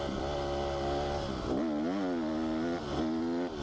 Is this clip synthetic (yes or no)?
no